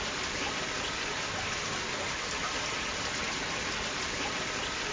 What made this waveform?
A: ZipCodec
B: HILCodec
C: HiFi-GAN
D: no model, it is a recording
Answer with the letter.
D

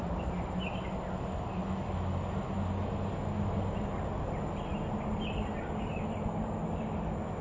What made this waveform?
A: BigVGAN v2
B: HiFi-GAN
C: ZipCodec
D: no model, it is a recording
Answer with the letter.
D